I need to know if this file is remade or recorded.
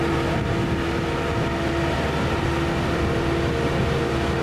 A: recorded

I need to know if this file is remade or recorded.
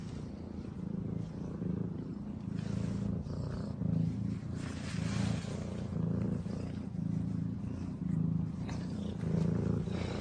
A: recorded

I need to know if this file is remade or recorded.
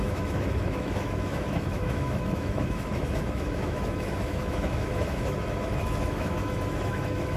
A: remade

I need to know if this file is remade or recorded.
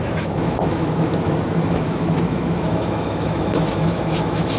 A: remade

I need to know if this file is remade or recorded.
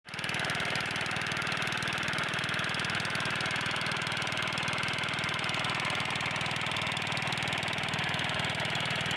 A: recorded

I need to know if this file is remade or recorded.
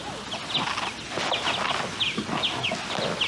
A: recorded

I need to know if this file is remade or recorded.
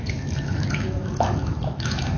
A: remade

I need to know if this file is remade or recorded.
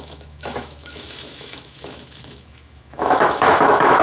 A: remade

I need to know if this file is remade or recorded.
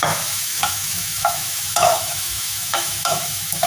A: remade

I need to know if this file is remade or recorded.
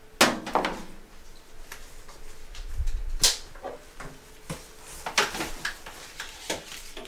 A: recorded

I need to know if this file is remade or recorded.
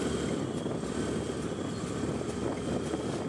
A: recorded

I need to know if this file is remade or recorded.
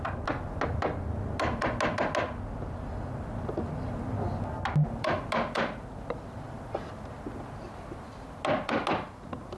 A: recorded